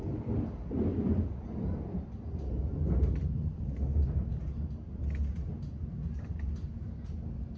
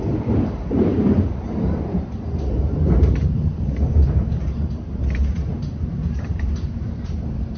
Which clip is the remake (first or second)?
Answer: second